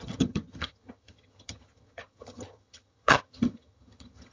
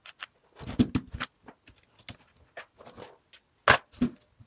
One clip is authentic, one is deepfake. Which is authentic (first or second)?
second